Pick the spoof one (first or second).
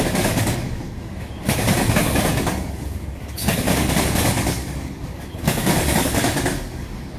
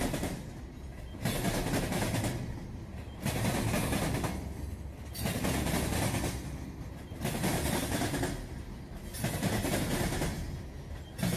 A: first